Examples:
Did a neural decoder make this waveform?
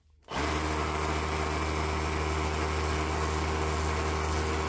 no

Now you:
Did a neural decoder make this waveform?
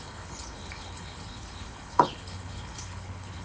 yes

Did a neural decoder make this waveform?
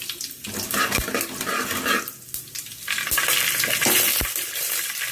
no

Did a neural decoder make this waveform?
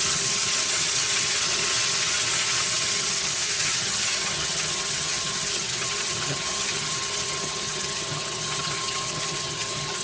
yes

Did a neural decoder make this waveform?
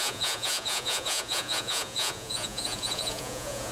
yes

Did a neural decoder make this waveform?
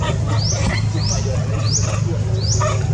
no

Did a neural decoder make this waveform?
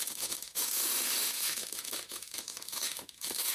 yes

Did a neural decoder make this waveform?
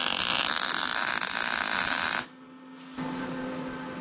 no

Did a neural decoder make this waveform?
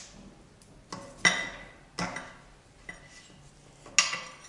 no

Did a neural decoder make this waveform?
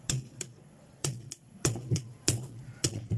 yes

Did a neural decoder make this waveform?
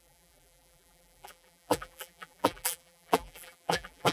yes